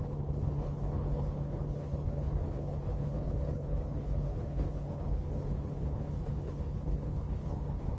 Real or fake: fake